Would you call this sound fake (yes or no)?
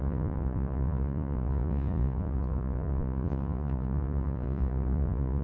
yes